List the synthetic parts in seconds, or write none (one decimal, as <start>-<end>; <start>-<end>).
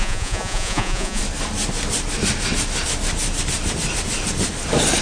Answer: 0.0-1.2